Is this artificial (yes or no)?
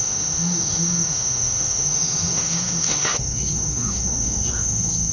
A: yes